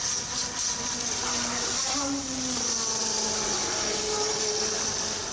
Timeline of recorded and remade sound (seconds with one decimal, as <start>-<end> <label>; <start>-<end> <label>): 0.0-5.3 recorded